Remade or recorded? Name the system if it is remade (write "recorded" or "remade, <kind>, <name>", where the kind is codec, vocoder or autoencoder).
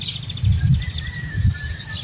recorded